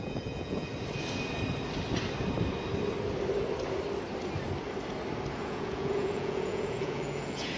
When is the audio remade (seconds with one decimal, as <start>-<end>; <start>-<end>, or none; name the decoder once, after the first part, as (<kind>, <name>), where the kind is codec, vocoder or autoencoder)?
0.0-0.7 (vocoder, Vocos); 5.3-7.6